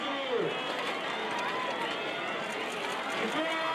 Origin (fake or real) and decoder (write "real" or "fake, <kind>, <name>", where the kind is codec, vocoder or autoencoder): real